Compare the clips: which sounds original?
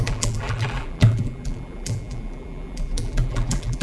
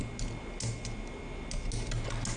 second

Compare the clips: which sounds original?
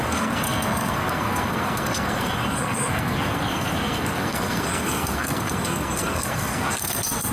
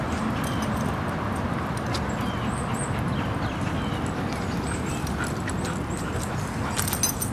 second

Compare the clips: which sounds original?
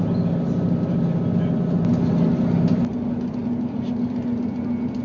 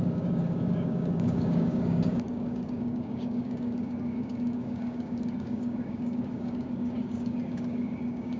first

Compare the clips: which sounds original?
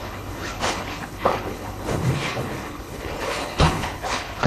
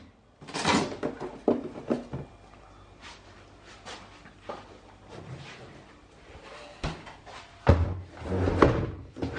second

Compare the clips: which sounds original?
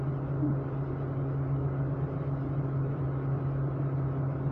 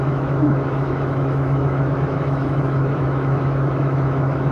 first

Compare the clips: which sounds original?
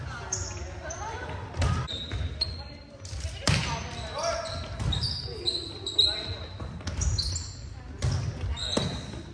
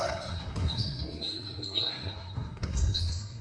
first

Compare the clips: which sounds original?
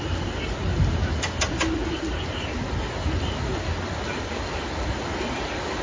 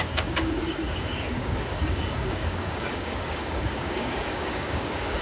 first